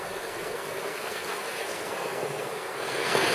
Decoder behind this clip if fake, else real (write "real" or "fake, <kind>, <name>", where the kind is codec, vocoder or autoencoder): fake, codec, SNAC